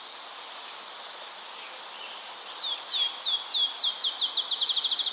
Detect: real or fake real